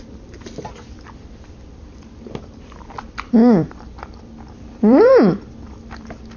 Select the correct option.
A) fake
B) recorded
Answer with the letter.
A